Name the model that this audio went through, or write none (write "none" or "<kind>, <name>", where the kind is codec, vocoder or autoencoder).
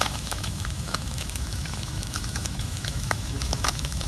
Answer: autoencoder, DAC-VAE